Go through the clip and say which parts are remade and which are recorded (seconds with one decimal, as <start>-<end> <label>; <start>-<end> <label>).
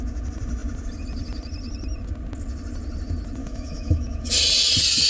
0.0-3.4 recorded; 3.4-4.3 remade; 4.3-5.1 recorded